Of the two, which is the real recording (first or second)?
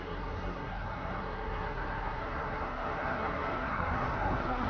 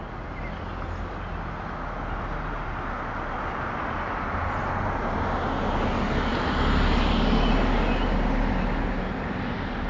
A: second